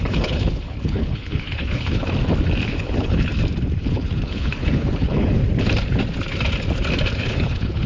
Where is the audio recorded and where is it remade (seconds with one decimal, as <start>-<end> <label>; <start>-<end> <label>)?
0.0-2.0 remade; 2.0-2.8 recorded; 2.8-3.3 remade; 3.3-3.8 recorded; 3.8-5.4 remade; 5.4-7.1 recorded; 7.1-7.9 remade